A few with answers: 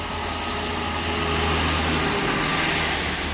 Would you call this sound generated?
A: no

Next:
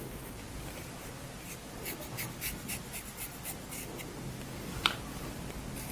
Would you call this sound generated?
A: no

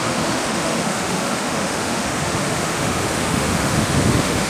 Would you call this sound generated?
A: yes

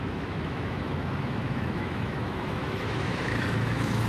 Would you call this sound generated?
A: yes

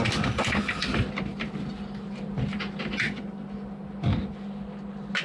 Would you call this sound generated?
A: no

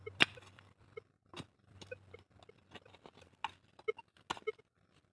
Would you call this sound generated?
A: no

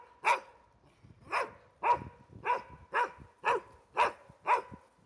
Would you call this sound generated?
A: no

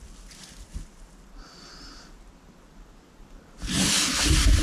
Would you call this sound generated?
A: no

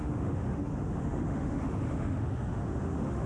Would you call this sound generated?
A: yes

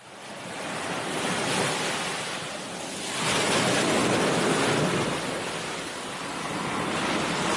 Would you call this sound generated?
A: no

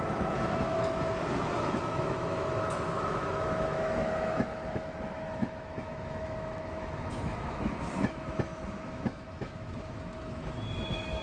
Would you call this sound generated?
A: yes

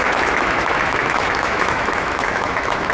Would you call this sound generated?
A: yes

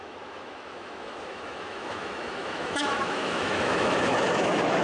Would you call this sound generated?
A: yes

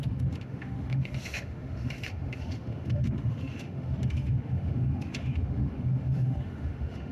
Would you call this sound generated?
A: yes